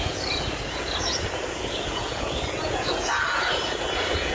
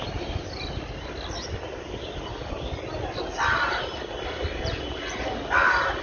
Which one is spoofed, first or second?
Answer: first